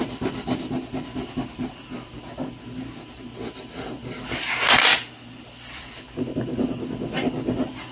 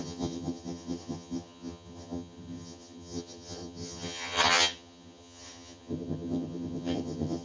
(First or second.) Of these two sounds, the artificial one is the second